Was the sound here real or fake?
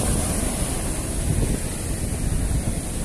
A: real